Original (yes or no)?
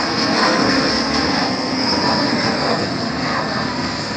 no